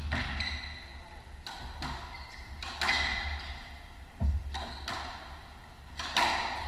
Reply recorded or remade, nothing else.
recorded